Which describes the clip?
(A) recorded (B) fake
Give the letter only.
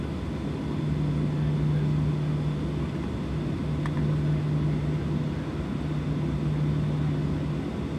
A